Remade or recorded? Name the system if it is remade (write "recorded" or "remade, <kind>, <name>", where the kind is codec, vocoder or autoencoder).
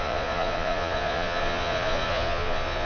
remade, vocoder, Vocos